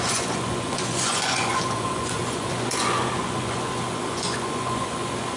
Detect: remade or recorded remade